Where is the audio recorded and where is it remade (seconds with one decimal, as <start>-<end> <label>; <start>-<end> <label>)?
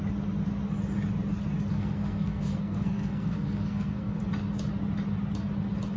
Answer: 0.0-1.7 recorded; 1.7-4.2 remade; 4.2-6.0 recorded